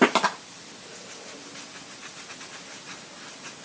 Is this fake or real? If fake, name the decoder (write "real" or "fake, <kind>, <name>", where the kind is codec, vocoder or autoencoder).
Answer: real